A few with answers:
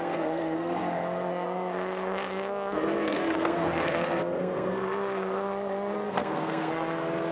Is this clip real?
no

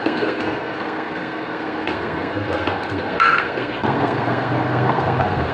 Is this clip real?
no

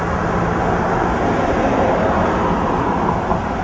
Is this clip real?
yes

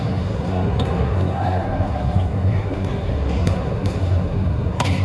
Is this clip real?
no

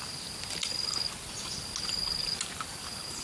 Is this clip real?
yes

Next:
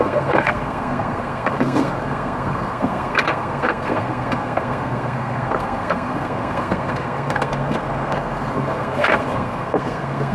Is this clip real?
no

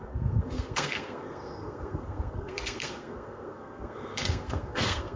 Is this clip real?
no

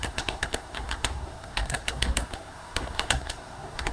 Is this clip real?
no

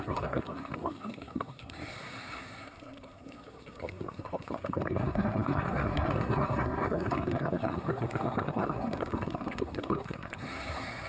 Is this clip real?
no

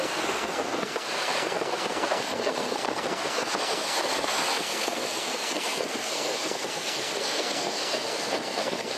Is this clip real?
no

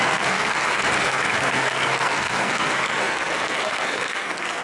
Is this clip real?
no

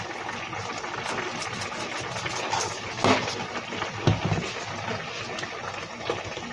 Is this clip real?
yes